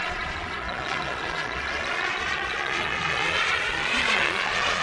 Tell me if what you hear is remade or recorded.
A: remade